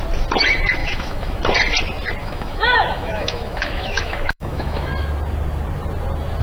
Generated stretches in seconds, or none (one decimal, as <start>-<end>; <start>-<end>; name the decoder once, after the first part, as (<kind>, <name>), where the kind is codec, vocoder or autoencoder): 0.8-1.4 (autoencoder, DAC-VAE); 2.2-4.9